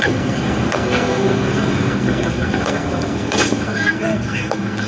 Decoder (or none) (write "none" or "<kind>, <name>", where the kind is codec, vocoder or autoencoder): codec, SNAC